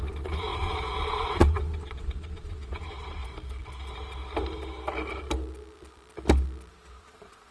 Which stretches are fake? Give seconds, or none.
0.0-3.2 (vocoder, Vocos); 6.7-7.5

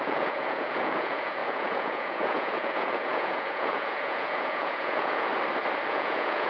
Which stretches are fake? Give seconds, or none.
0.0-5.3 (vocoder, Vocos); 5.9-6.5

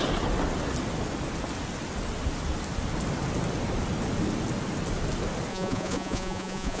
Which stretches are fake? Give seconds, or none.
5.5-6.8 (vocoder, Vocos)

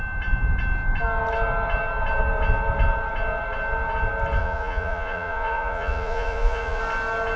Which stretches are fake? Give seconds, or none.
4.4-6.8 (vocoder, Vocos)

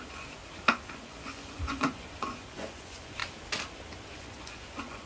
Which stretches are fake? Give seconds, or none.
0.0-0.4 (vocoder, Vocos); 0.9-3.2; 4.0-5.1

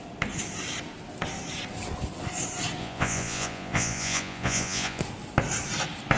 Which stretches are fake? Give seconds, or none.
2.8-5.0 (vocoder, Vocos)